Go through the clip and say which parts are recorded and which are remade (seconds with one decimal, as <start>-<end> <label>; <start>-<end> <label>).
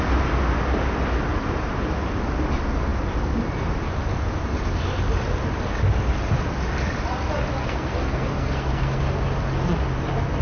0.0-7.6 recorded; 7.6-9.0 remade; 9.0-10.4 recorded